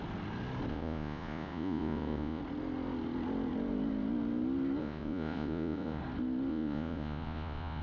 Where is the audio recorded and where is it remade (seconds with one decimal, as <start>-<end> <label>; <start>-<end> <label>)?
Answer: 0.0-0.7 recorded; 0.7-2.4 remade; 2.4-4.8 recorded; 4.8-6.0 remade; 6.0-6.5 recorded; 6.5-7.8 remade